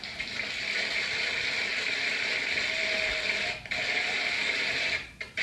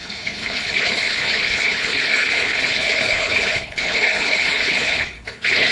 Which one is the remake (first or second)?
second